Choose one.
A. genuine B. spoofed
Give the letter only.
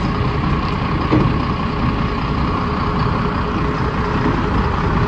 A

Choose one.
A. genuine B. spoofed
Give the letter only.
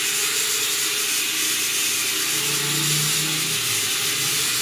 A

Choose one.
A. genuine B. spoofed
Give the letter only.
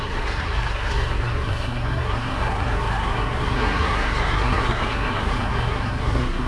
B